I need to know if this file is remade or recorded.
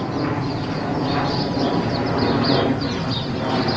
recorded